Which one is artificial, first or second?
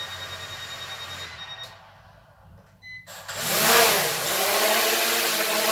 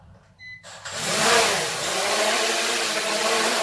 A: second